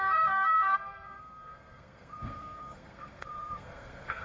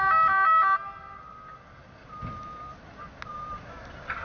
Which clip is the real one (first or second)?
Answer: second